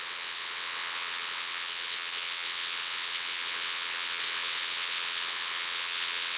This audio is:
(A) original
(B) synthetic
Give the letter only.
B